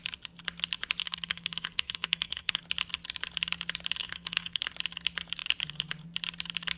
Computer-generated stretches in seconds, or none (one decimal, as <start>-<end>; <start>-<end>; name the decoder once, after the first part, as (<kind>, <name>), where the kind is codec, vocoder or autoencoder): 1.0-2.6 (codec, SNAC); 4.0-4.6